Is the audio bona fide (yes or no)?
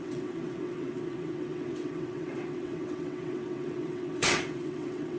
no